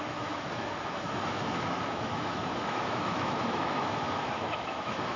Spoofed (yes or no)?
yes